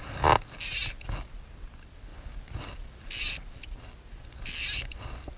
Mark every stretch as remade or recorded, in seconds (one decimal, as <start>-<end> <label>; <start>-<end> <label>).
0.0-5.4 recorded